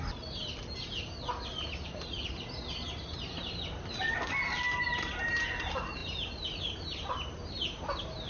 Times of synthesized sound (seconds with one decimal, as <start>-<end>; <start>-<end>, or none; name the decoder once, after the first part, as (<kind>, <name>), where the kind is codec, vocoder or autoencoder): none

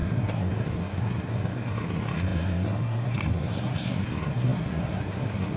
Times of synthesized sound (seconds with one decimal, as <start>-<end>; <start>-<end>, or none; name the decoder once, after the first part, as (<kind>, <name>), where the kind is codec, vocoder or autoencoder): 0.0-5.6 (codec, SNAC)

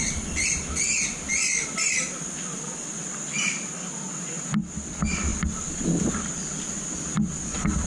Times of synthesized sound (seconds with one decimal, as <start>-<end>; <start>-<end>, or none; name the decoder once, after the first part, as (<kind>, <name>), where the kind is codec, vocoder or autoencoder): none

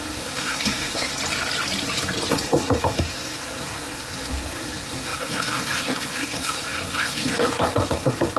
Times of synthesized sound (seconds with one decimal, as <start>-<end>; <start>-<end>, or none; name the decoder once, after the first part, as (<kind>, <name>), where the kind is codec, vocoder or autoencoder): 0.0-1.1 (codec, SNAC); 2.3-8.4